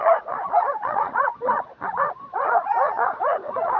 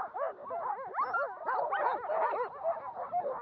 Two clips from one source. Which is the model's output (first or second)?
first